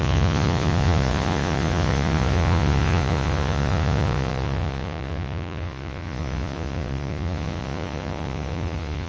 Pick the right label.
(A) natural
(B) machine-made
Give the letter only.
B